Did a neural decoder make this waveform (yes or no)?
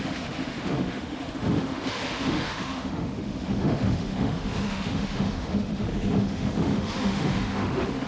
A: yes